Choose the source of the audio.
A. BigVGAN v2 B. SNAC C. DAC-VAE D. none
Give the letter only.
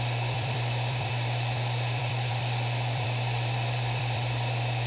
A